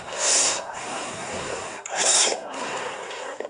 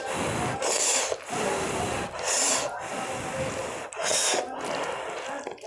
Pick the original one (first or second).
second